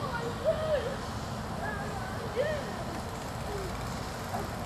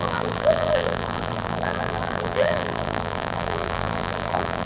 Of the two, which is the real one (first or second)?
first